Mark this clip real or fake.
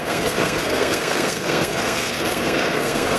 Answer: fake